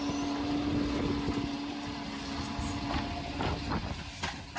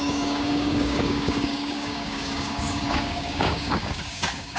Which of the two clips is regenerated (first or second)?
second